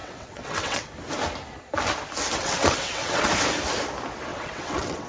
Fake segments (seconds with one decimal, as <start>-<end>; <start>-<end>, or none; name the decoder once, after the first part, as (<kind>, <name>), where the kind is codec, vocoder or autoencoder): 0.0-0.9 (vocoder, WaveNeXt); 2.4-3.3; 4.3-5.1